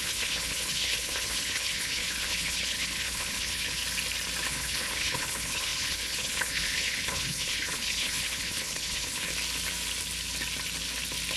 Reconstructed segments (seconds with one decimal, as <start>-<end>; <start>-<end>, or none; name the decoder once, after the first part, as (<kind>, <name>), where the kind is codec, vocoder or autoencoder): 0.0-3.8 (codec, HILCodec); 4.5-9.3